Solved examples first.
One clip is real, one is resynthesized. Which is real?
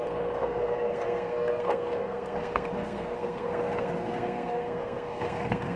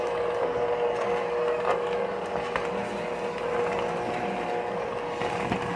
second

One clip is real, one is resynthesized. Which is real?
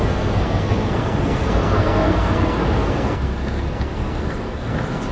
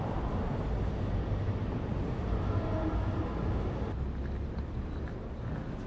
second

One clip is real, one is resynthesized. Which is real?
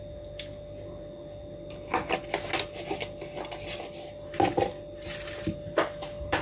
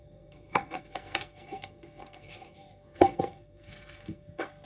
first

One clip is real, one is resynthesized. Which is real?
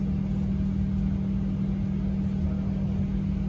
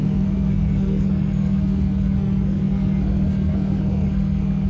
first